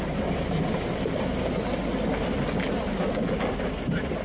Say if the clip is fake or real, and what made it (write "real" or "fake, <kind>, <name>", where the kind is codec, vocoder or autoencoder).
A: real